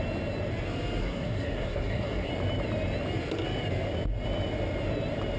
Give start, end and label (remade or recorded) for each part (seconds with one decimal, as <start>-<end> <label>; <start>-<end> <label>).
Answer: 0.0-1.0 recorded; 1.0-2.3 remade; 2.3-5.4 recorded

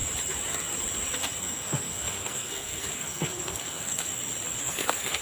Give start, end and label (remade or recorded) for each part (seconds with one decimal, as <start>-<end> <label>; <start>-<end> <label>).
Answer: 0.0-1.4 recorded; 1.4-4.1 remade; 4.1-4.6 recorded; 4.6-5.2 remade

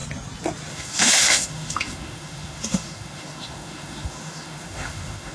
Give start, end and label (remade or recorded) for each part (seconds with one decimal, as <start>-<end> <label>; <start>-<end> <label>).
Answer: 0.0-0.7 recorded; 0.7-5.3 remade

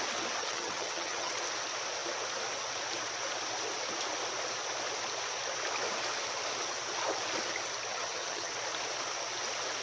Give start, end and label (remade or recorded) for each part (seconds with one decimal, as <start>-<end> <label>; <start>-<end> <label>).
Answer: 0.0-0.4 recorded; 0.4-1.3 remade; 1.3-7.9 recorded; 7.9-8.5 remade; 8.5-9.8 recorded

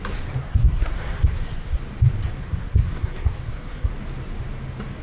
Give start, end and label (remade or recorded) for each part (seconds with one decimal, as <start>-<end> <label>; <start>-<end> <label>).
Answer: 0.0-0.4 recorded; 0.4-1.8 remade; 1.8-2.4 recorded; 2.4-3.9 remade; 3.9-5.0 recorded

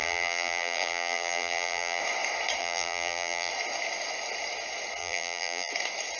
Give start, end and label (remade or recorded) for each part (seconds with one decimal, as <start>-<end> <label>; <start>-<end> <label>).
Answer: 0.0-2.0 remade; 2.0-2.6 recorded; 2.6-3.5 remade; 3.5-5.0 recorded; 5.0-5.7 remade; 5.7-6.2 recorded

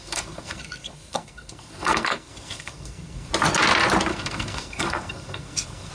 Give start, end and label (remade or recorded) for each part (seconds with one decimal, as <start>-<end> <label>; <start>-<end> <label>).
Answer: 0.0-3.3 remade; 3.3-4.1 recorded; 4.1-5.9 remade